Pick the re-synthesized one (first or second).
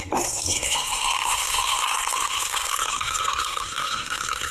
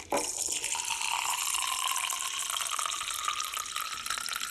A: first